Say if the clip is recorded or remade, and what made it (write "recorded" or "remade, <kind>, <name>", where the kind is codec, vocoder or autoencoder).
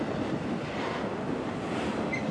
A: recorded